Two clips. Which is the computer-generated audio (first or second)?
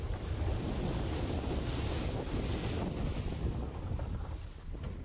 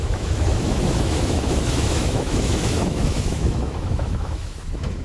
second